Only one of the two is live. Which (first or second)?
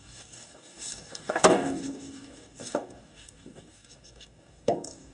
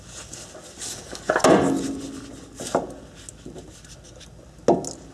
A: second